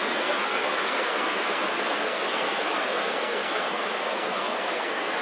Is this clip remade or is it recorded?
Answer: remade